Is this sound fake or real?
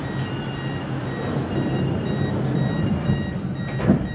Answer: real